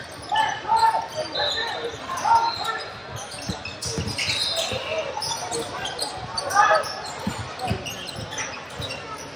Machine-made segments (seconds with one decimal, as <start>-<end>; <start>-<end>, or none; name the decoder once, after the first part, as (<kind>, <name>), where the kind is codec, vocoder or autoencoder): none